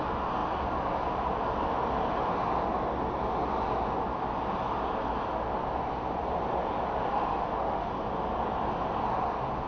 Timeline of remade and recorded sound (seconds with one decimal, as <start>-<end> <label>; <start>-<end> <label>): 0.0-7.1 recorded; 7.1-7.9 remade; 7.9-9.7 recorded